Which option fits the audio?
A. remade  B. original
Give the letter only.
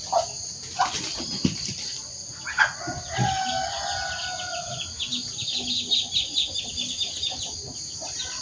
B